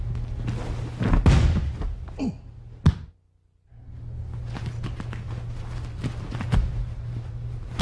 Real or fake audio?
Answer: real